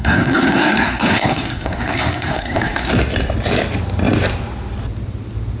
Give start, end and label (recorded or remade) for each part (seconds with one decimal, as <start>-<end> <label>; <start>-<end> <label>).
0.0-2.9 remade; 2.9-5.6 recorded